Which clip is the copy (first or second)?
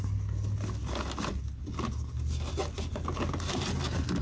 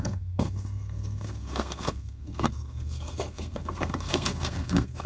second